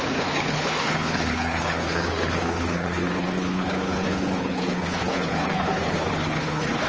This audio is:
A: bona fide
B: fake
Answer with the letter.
B